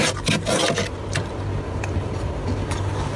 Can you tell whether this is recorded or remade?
recorded